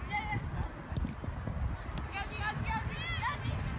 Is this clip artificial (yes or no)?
no